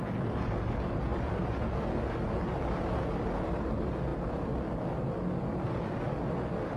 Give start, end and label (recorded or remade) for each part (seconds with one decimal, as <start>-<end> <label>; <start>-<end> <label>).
0.0-6.8 recorded